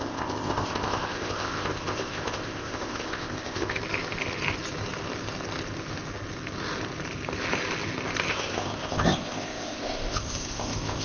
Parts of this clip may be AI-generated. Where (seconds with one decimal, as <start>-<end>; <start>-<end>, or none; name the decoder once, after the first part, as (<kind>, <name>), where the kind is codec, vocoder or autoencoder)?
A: 0.0-3.8 (codec, ZipCodec); 8.3-11.0